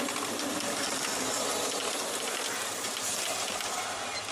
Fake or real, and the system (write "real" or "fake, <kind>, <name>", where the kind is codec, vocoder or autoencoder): real